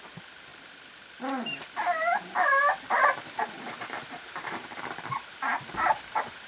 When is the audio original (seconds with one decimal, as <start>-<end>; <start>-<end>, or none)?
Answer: 0.5-4.2